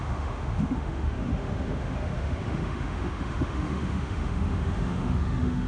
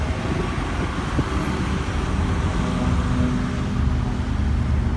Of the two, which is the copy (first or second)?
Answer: first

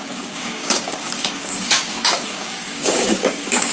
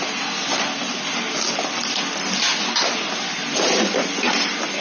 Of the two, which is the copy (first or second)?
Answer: first